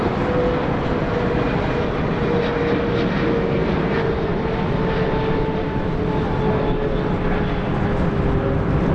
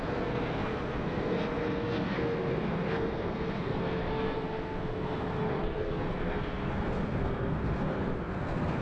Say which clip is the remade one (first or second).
second